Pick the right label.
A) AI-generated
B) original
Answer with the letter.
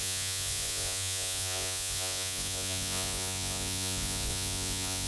A